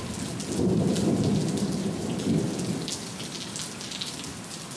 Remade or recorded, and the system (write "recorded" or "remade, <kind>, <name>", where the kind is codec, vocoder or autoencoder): recorded